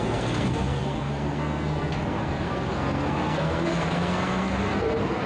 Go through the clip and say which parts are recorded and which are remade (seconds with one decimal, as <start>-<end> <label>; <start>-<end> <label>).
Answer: 0.0-5.3 remade